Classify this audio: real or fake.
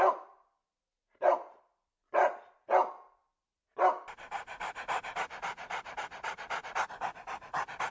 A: real